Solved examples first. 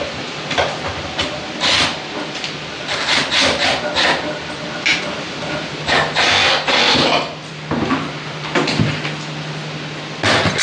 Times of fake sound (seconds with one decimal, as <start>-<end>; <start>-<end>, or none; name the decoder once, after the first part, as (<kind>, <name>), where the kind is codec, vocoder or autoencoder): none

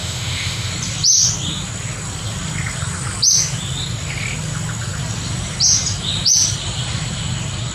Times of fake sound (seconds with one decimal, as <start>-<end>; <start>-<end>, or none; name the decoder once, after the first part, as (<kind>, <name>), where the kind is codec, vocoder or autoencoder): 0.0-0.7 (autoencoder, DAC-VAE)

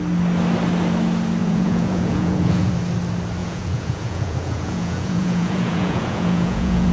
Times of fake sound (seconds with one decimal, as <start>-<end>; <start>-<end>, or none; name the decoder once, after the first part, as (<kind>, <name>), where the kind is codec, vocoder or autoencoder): 1.4-2.7 (vocoder, Vocos); 3.4-6.9

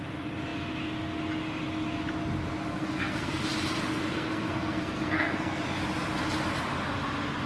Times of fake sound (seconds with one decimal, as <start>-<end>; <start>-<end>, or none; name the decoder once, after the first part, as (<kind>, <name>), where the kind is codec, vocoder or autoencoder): 2.7-3.4 (codec, SNAC); 4.0-5.6

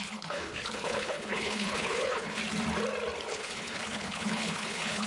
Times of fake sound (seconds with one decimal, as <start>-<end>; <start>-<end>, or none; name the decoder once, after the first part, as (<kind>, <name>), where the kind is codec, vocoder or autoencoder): 0.0-2.4 (codec, HILCodec); 3.3-5.1

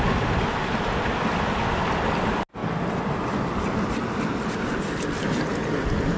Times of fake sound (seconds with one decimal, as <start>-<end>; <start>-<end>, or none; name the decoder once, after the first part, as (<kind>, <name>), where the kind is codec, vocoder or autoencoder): none

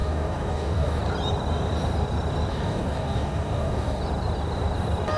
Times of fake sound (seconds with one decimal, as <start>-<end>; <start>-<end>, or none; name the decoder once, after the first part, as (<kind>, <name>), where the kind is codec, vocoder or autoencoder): 0.0-1.0 (codec, DAC); 2.5-4.0